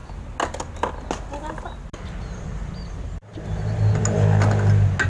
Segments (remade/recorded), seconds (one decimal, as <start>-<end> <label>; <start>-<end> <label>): 0.0-5.1 recorded